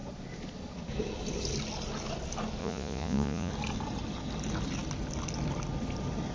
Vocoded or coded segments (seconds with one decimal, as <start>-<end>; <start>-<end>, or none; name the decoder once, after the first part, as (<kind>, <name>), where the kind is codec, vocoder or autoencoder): 2.6-3.5 (vocoder, Vocos)